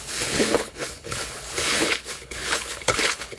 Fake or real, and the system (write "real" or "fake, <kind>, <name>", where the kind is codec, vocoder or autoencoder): fake, codec, HILCodec